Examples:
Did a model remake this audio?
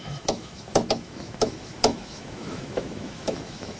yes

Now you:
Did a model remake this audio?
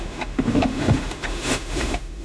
yes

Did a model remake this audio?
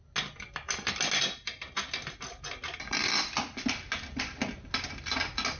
no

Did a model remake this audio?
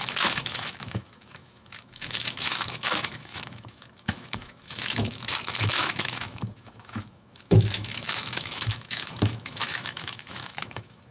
yes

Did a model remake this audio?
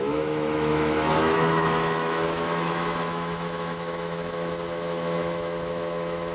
yes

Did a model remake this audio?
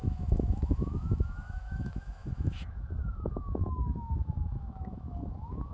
yes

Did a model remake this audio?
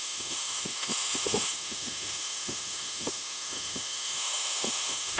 yes